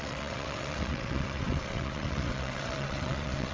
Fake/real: fake